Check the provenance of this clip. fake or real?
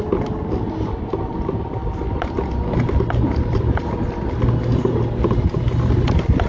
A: real